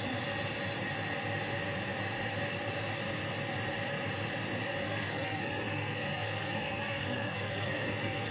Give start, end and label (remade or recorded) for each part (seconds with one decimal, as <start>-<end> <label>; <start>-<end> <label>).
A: 0.0-4.8 recorded; 4.8-8.3 remade